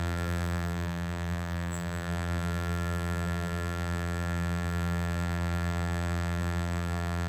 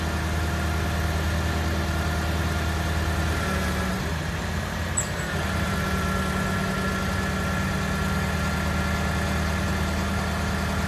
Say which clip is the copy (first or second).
first